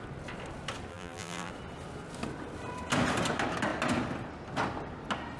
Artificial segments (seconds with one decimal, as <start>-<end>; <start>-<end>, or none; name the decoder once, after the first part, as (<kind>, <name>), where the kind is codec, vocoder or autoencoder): 0.9-1.5 (vocoder, BigVGAN v2)